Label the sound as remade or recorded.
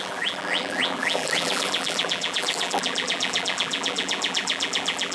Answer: remade